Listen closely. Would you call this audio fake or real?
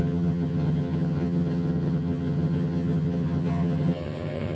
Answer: fake